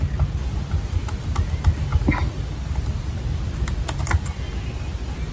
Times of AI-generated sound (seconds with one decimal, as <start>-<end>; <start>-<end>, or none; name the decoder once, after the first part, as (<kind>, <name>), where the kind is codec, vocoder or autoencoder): none